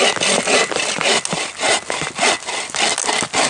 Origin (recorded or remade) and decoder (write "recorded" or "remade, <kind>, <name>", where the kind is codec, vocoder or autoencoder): recorded